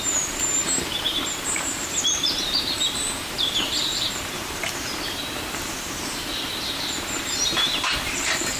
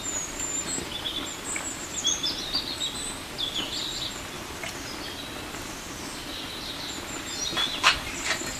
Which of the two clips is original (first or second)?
second